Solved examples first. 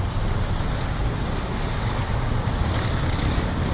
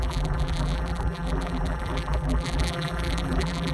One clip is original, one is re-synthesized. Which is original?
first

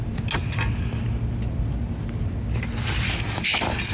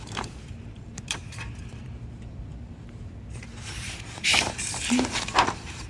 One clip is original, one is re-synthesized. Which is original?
first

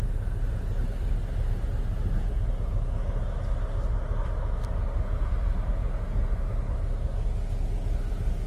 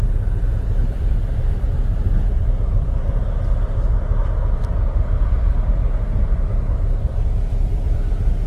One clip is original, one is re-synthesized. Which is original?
first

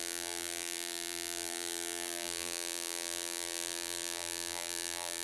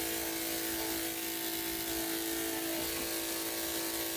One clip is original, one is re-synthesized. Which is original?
second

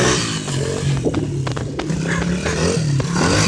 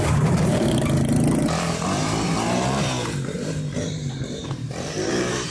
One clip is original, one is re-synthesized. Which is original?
first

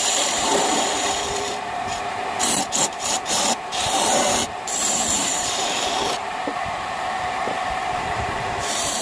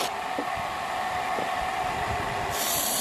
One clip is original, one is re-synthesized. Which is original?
second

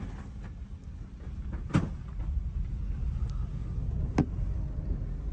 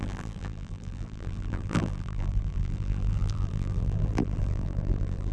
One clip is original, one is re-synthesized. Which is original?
first